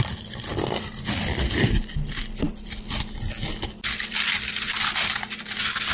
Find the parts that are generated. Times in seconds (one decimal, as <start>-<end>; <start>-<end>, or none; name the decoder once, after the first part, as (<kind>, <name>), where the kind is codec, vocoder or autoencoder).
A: none